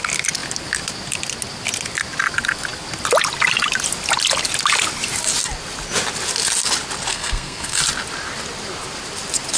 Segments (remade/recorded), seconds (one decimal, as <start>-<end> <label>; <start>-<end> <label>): 0.0-7.1 recorded; 7.1-7.8 remade; 7.8-9.6 recorded